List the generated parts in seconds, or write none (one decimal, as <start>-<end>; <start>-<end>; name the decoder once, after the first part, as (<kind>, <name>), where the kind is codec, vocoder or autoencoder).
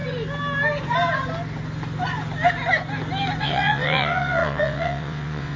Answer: 3.4-5.6 (vocoder, WaveNeXt)